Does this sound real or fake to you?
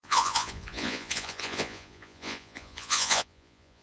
fake